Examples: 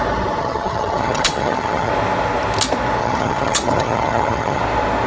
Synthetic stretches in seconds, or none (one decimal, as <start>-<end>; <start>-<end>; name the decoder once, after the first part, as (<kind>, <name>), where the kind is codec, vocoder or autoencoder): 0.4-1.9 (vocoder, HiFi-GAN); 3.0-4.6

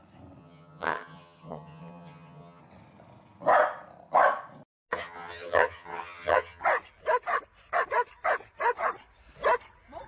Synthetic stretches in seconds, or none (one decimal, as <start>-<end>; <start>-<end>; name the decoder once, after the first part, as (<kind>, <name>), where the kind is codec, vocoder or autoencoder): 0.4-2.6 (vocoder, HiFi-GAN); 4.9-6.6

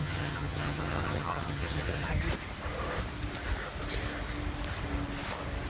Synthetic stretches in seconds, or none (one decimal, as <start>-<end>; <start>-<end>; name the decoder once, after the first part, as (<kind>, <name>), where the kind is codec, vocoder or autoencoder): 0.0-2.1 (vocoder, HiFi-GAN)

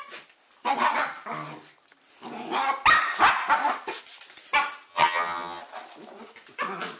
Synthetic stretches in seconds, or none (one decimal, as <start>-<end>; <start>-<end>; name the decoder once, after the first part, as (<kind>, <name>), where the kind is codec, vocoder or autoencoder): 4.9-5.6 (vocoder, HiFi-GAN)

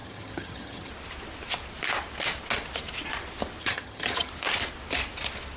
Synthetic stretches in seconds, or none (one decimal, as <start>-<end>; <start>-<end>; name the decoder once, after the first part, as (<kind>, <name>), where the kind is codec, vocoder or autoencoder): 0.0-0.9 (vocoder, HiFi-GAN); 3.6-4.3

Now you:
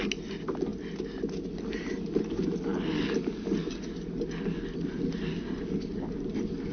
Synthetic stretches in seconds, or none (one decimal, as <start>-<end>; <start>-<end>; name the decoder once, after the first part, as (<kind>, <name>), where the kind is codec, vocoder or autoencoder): none

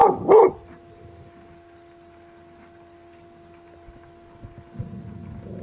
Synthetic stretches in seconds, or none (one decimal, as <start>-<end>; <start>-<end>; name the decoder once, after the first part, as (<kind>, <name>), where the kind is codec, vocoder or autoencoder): none